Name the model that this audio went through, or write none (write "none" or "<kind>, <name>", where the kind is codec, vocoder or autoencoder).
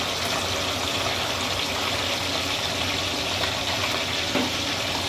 none